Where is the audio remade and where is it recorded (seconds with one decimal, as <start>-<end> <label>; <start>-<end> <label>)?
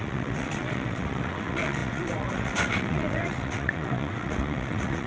0.0-5.1 remade